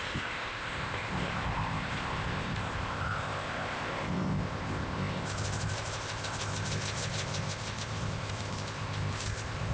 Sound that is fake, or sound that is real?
fake